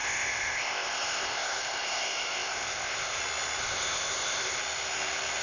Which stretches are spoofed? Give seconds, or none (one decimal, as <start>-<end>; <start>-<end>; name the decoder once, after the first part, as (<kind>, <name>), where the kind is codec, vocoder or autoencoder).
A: 0.0-3.2 (codec, ZipCodec); 3.6-4.6